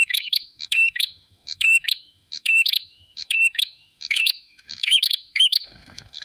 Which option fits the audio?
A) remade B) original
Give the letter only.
A